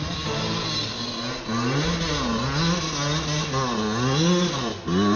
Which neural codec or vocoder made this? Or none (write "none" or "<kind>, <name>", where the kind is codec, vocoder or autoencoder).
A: none